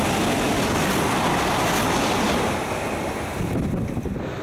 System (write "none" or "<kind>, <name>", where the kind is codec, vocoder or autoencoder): none